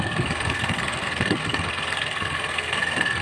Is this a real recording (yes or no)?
no